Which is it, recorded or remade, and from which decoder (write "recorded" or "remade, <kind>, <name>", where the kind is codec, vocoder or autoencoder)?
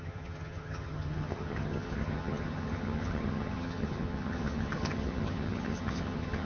remade, vocoder, HiFi-GAN